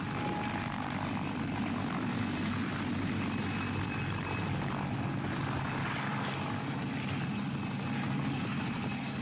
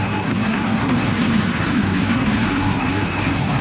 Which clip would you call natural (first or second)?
first